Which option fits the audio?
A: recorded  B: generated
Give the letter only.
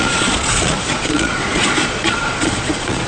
B